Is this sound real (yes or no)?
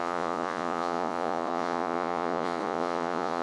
no